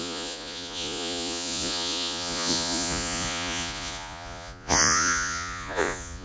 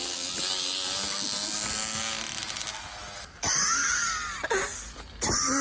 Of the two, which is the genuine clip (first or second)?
second